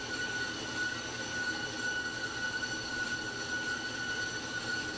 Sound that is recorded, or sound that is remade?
recorded